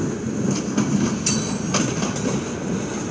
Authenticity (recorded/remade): recorded